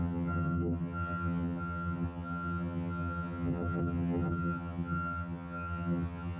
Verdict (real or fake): fake